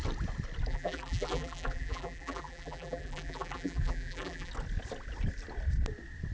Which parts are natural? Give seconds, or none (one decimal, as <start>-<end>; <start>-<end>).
0.0-0.7; 4.5-6.3